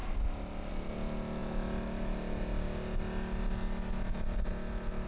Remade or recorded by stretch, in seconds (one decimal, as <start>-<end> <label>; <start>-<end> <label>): 0.0-5.1 recorded